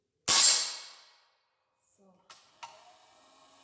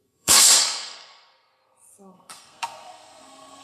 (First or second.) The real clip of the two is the first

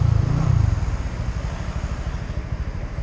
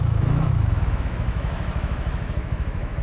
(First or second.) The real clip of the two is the first